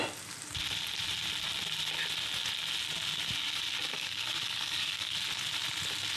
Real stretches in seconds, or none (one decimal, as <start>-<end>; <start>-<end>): 0.0-3.9; 5.1-6.2